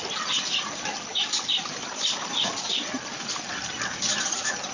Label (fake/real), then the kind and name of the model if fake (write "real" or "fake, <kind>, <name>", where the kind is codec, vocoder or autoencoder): real